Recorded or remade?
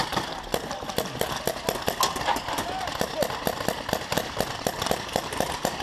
recorded